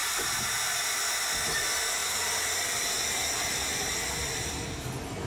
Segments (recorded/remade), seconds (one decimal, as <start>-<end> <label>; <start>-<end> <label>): 0.0-0.7 remade; 0.7-5.3 recorded